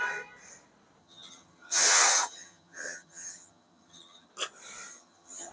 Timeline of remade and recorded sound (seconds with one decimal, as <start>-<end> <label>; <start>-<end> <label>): 0.0-1.0 recorded; 1.0-4.3 remade; 4.3-4.9 recorded; 4.9-5.5 remade